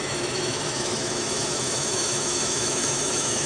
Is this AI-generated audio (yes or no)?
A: yes